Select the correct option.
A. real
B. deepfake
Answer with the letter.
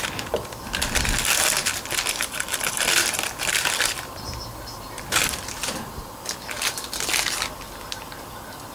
A